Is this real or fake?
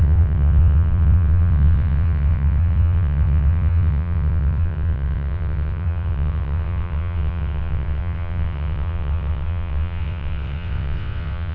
fake